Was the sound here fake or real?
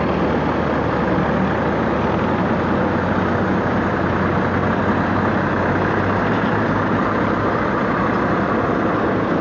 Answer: real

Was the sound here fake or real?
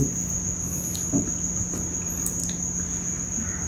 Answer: real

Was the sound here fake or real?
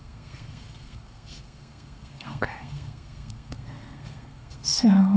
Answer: fake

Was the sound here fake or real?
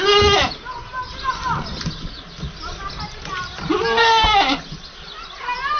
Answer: real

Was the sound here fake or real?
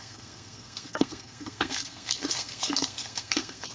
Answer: fake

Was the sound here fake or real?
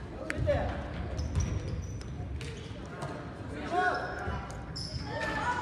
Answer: real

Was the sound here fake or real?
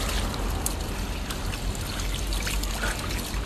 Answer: real